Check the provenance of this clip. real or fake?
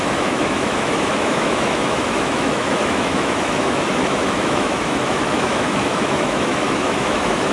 fake